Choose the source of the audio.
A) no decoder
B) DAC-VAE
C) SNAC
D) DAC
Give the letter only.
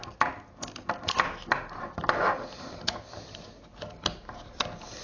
A